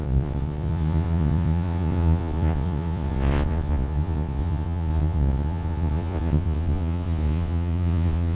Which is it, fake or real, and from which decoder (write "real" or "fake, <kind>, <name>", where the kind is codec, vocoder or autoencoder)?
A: fake, vocoder, Vocos